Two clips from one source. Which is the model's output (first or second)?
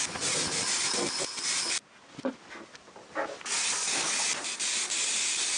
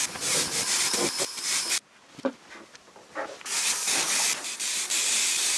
second